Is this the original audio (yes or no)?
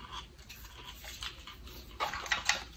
yes